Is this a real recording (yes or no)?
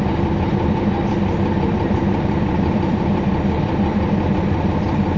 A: no